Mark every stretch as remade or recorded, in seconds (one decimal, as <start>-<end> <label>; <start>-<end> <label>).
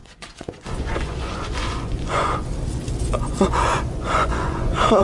0.0-2.4 remade; 2.4-3.0 recorded; 3.0-5.0 remade